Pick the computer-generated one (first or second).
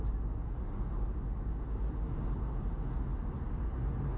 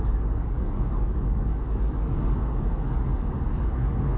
second